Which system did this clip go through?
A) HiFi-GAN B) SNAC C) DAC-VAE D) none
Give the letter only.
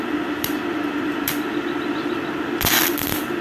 D